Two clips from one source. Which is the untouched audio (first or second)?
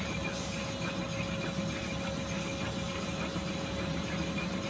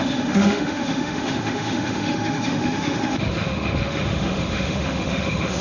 first